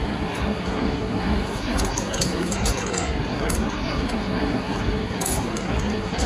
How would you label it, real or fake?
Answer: fake